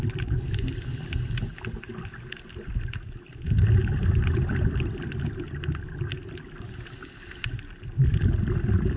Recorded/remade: recorded